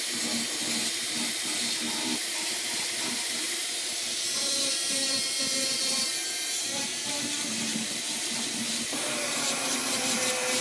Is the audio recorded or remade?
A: remade